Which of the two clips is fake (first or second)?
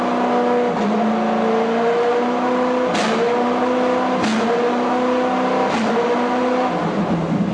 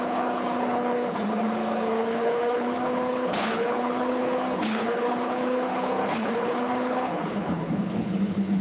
second